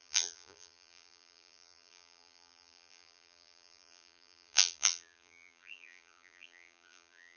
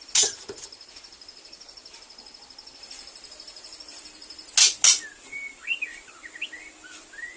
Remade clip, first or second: first